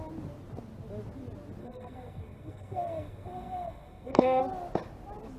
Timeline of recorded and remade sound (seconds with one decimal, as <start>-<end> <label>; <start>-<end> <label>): 0.0-1.6 recorded; 1.6-4.4 remade; 4.4-5.4 recorded